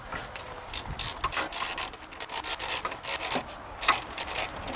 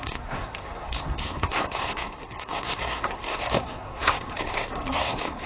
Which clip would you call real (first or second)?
first